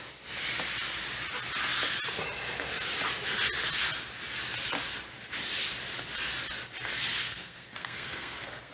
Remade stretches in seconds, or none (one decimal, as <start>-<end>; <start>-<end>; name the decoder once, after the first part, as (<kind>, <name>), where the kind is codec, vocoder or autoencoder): 7.1-8.7 (codec, SNAC)